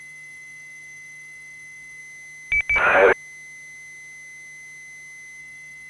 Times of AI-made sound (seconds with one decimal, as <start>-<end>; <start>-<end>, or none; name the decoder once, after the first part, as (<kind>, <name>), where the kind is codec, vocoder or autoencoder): 0.0-2.0 (autoencoder, DAC-VAE); 5.4-5.9